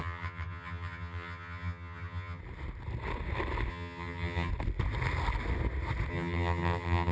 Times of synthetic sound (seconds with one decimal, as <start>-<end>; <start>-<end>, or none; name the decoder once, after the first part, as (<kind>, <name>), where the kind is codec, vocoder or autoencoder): 0.0-2.4 (vocoder, HiFi-GAN); 3.7-4.5; 6.1-7.1